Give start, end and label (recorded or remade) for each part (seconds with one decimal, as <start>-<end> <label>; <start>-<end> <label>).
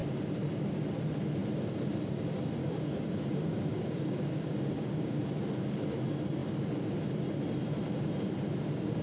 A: 0.0-2.6 recorded; 2.6-5.2 remade; 5.2-9.0 recorded